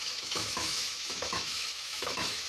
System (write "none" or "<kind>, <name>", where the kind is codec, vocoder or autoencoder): autoencoder, DAC-VAE